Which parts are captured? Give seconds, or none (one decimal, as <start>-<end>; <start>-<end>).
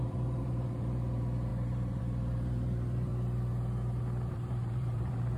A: 3.1-4.3